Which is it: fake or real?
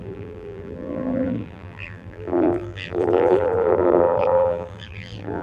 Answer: fake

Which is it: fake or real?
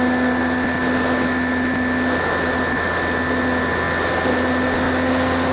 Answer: real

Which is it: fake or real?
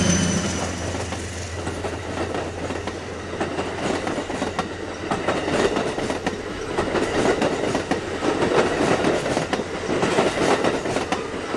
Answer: real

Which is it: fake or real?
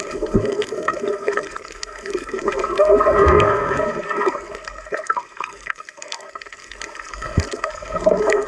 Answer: fake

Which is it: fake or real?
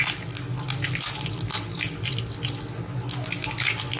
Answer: real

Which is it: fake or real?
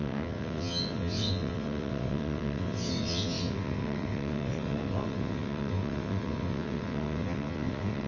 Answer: fake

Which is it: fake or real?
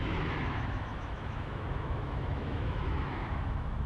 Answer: fake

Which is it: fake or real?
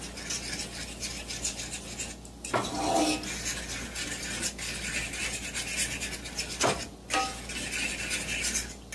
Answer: real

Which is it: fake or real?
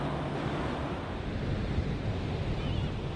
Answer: real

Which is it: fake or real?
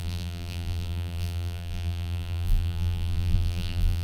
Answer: fake